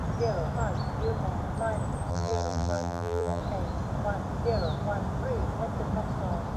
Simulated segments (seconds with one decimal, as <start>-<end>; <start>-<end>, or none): 2.1-3.4

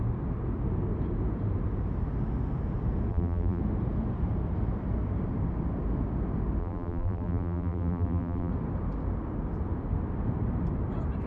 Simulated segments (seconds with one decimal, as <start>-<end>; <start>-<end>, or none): 3.1-3.6; 6.6-8.5